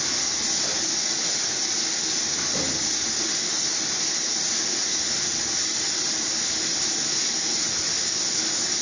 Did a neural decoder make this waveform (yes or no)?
no